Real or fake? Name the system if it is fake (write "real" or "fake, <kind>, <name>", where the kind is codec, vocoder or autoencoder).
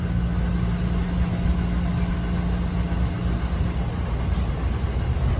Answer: real